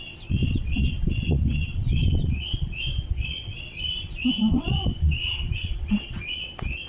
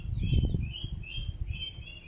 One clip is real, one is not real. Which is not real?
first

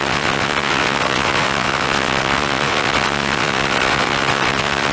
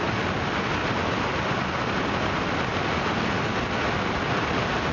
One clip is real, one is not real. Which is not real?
first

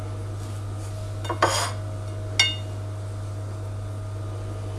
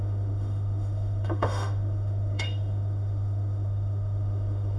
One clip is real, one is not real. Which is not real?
second